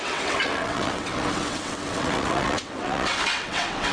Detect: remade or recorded remade